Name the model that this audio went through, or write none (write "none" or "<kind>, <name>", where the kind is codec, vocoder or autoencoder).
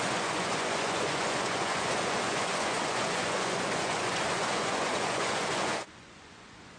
vocoder, Vocos